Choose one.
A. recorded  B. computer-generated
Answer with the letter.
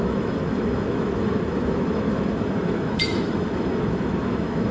B